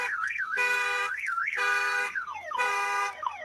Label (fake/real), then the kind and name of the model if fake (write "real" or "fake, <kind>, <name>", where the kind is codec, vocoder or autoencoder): fake, codec, SNAC